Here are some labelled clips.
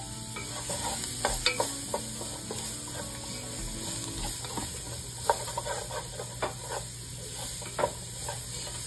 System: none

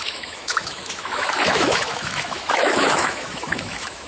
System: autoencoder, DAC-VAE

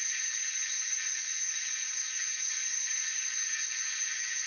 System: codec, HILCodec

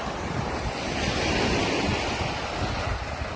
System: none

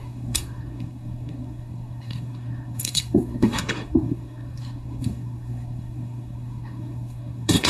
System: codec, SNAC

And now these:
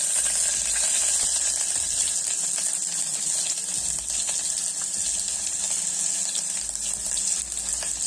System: none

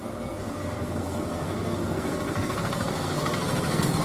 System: codec, SNAC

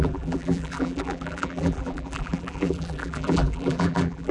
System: vocoder, BigVGAN v2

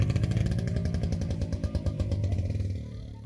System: none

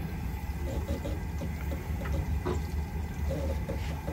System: none